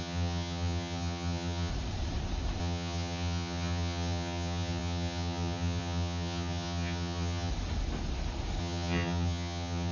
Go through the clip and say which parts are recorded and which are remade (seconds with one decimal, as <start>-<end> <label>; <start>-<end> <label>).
0.0-1.7 remade; 1.7-2.6 recorded; 2.6-7.5 remade; 7.5-8.6 recorded; 8.6-9.9 remade

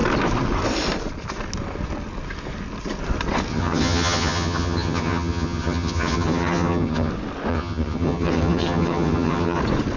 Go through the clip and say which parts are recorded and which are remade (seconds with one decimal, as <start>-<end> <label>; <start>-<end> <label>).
0.0-3.5 recorded; 3.5-7.1 remade; 7.1-7.5 recorded; 7.5-9.6 remade; 9.6-10.0 recorded

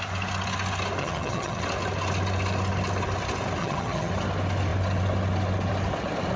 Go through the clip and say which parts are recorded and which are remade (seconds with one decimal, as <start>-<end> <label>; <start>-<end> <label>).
0.0-1.0 recorded; 1.0-1.6 remade; 1.6-3.6 recorded; 3.6-4.1 remade; 4.1-6.4 recorded

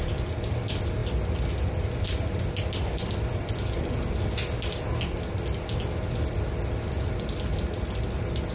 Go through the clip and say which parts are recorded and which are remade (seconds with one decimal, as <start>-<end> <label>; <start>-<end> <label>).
0.0-8.5 recorded

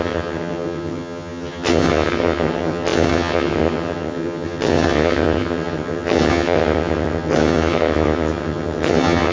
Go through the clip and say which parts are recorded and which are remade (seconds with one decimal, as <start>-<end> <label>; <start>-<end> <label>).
0.0-9.3 remade

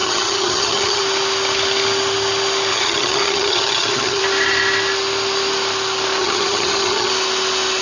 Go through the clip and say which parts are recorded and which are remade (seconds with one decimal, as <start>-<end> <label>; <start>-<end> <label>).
0.0-1.0 remade; 1.0-2.7 recorded; 2.7-4.2 remade; 4.2-6.2 recorded; 6.2-7.1 remade; 7.1-7.8 recorded

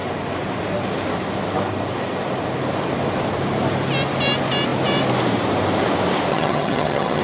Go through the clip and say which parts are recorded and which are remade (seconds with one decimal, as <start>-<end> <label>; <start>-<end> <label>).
0.0-6.3 recorded; 6.3-7.2 remade

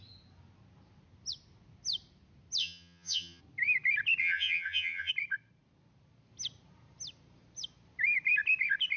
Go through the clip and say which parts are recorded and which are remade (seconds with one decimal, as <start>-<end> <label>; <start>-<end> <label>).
0.0-2.6 recorded; 2.6-3.4 remade; 3.4-4.2 recorded; 4.2-5.1 remade; 5.1-9.0 recorded